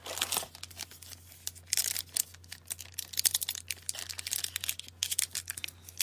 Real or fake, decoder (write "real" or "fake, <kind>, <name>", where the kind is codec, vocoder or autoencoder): real